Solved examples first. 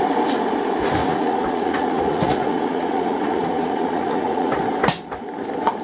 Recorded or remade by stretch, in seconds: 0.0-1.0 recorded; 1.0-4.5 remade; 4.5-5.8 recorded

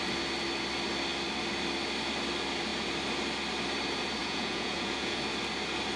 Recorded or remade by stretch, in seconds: 0.0-4.2 recorded; 4.2-5.2 remade; 5.2-6.0 recorded

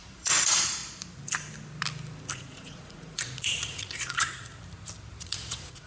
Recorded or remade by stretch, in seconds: 0.0-0.8 remade; 0.8-2.3 recorded; 2.3-4.5 remade; 4.5-5.2 recorded; 5.2-5.9 remade